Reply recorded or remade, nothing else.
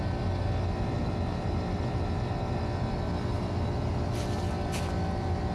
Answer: recorded